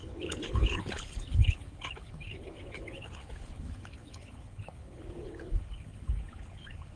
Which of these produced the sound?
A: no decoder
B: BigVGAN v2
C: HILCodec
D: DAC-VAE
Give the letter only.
C